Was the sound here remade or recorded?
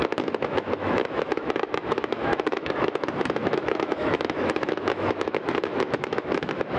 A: remade